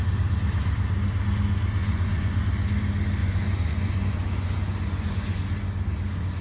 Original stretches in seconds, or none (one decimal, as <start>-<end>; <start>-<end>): 0.0-1.8; 2.4-3.2; 5.4-6.4